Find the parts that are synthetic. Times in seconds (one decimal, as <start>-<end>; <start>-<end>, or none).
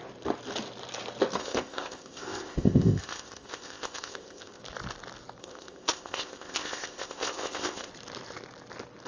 1.4-4.6; 5.4-7.9